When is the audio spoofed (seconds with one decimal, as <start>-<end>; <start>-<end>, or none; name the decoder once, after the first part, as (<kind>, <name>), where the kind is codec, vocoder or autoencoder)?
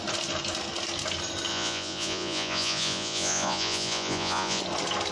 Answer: 1.5-4.6 (vocoder, Vocos)